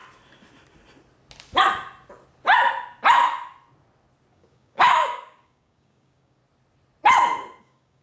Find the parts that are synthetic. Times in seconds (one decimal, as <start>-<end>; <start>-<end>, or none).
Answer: 4.3-6.4; 7.6-8.0